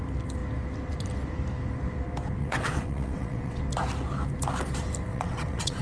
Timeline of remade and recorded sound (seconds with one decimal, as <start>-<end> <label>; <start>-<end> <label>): 0.0-2.4 recorded; 2.4-3.6 remade; 3.6-5.1 recorded; 5.1-5.8 remade